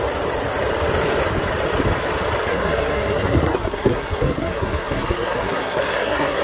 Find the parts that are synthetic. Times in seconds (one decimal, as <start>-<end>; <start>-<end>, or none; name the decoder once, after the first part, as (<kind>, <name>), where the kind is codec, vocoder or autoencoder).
2.5-6.4 (codec, SNAC)